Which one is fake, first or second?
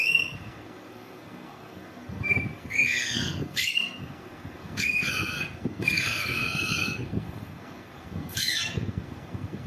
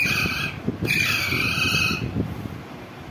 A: first